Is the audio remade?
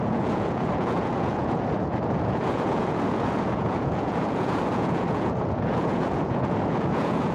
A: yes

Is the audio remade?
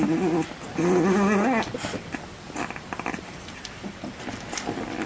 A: no